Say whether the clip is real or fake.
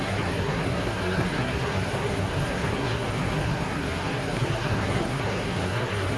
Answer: fake